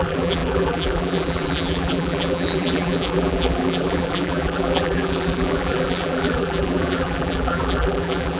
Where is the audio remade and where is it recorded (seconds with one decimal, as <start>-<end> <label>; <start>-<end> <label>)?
0.0-8.4 remade

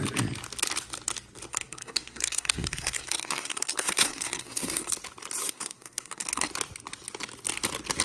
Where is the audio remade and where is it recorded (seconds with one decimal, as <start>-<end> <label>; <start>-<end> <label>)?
0.0-1.5 recorded; 1.5-4.9 remade; 4.9-5.4 recorded; 5.4-6.5 remade; 6.5-8.0 recorded

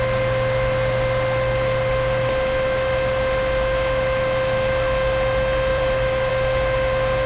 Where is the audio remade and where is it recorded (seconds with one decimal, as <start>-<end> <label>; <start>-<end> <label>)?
0.0-5.7 recorded; 5.7-6.3 remade; 6.3-7.3 recorded